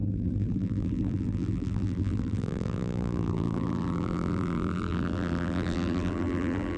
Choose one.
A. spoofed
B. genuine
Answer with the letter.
A